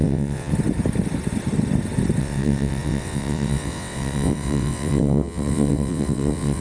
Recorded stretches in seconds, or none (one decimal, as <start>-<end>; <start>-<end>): 0.5-2.2